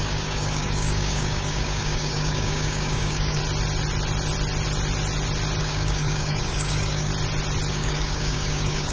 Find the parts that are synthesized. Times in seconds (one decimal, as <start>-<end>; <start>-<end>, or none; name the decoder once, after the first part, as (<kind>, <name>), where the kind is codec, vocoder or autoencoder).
0.0-3.4 (codec, DAC); 5.6-7.1; 7.7-8.9